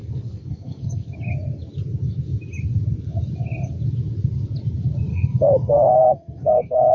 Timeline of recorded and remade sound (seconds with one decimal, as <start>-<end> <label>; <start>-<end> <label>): 0.0-1.1 remade; 1.1-5.1 recorded; 5.1-6.9 remade